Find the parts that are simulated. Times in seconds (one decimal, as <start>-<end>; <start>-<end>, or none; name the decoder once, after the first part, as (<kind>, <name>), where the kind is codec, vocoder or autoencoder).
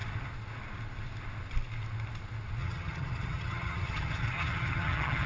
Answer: 2.6-5.3 (vocoder, HiFi-GAN)